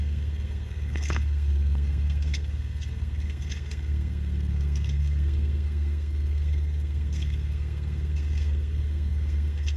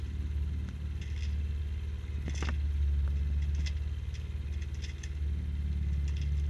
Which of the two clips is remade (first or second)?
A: first